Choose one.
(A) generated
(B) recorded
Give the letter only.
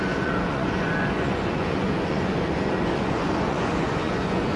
A